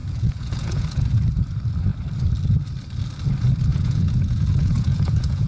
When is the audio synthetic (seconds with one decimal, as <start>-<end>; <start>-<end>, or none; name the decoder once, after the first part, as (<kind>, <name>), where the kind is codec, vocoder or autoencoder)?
0.0-1.1 (vocoder, Vocos); 3.7-5.5